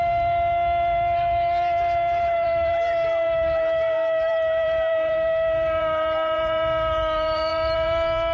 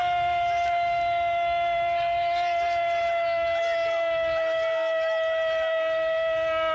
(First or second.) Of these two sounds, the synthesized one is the first